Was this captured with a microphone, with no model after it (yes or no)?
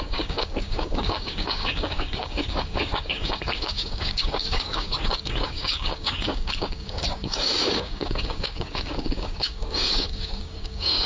no